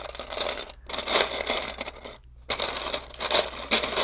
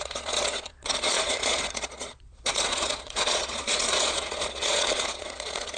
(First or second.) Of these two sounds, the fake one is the second